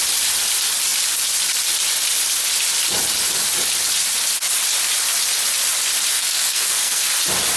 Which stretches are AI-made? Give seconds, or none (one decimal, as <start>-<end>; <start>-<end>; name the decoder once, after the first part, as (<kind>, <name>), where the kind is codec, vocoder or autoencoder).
6.1-7.1 (codec, SNAC)